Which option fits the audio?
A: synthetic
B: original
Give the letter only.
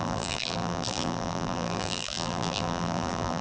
A